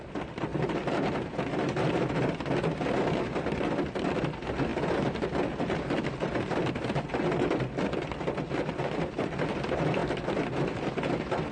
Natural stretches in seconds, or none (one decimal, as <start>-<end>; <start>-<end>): 0.0-4.7; 7.0-11.5